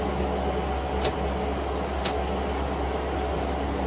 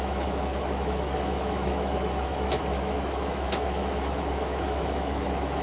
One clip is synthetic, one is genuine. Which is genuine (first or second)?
first